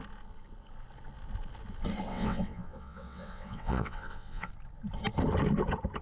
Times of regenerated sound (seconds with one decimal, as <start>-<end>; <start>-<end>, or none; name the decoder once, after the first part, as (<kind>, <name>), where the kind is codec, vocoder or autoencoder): 2.1-4.5 (vocoder, WaveNeXt)